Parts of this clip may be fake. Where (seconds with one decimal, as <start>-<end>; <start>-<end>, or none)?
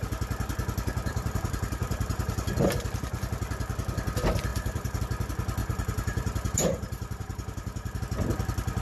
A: 1.1-2.7; 4.5-5.0; 5.6-8.0